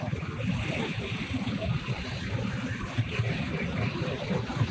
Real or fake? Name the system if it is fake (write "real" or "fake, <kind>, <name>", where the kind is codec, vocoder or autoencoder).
real